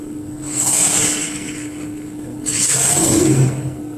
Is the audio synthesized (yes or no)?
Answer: yes